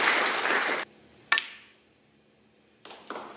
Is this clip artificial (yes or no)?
no